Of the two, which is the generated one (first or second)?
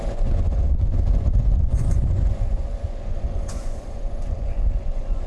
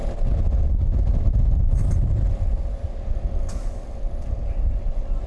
first